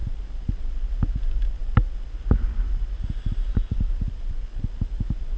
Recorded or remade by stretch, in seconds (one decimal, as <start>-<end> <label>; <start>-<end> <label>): 0.0-5.4 recorded